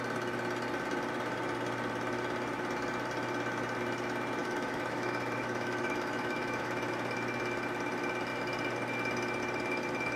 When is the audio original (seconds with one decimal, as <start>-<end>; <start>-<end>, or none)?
0.0-4.4; 6.9-10.2